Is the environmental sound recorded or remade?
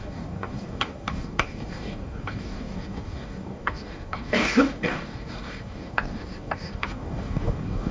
remade